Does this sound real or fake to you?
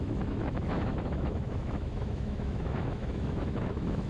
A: fake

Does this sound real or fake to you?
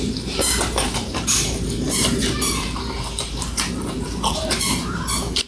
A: fake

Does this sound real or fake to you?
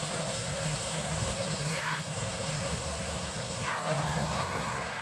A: fake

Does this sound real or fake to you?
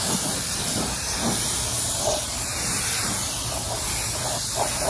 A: fake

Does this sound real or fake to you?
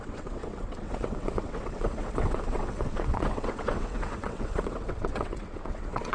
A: fake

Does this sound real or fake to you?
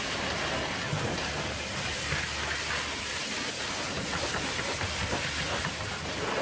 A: real